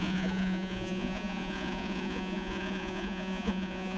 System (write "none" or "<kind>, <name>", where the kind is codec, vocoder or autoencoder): vocoder, Vocos